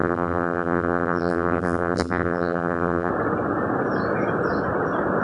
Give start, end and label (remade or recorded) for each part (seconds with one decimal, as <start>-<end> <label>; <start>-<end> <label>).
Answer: 0.0-3.1 remade; 3.1-5.2 recorded